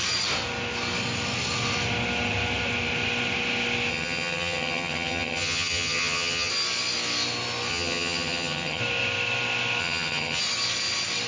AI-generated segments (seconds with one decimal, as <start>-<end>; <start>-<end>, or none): 3.9-6.5; 7.7-8.8; 9.8-10.4